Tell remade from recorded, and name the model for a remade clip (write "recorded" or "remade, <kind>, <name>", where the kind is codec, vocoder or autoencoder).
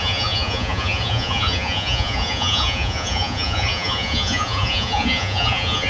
remade, vocoder, Vocos